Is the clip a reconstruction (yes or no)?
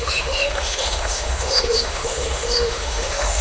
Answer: yes